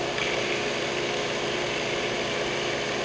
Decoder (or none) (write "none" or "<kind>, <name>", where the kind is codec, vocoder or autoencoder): none